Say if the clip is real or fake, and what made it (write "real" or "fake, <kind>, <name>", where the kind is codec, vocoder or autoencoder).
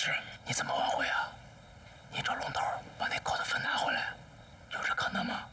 real